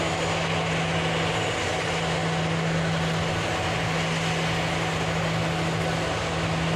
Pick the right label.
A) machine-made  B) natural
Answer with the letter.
B